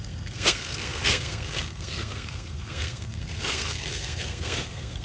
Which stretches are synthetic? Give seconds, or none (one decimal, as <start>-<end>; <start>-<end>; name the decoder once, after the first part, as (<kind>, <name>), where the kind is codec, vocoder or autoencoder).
0.0-5.0 (codec, SNAC)